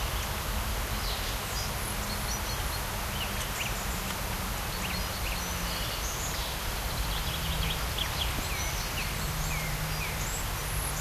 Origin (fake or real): real